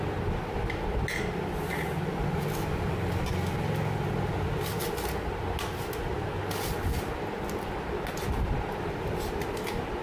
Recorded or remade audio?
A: recorded